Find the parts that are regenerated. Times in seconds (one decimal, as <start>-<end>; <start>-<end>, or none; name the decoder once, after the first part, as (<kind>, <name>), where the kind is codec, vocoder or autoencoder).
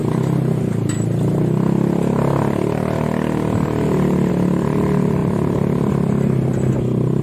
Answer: none